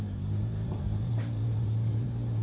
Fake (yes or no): yes